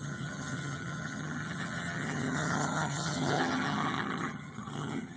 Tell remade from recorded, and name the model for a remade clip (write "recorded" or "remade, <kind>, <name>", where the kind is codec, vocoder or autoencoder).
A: remade, vocoder, HiFi-GAN